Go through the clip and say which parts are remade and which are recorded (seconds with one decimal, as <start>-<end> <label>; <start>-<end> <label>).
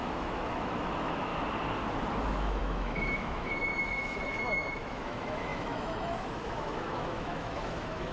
0.0-1.3 remade; 1.3-2.2 recorded; 2.2-8.1 remade